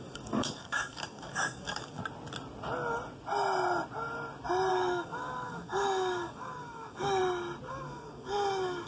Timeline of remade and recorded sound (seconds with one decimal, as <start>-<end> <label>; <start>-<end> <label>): 0.0-2.0 remade; 2.0-4.7 recorded; 4.7-7.2 remade; 7.2-7.7 recorded; 7.7-8.9 remade